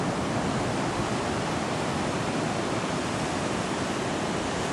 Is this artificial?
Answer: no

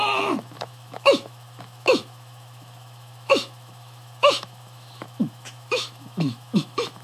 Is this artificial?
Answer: yes